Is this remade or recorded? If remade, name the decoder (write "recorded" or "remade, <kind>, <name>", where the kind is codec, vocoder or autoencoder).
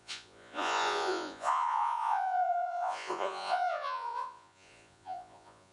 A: remade, vocoder, Vocos